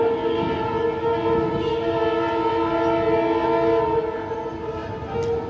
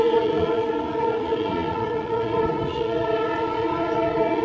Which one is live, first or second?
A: first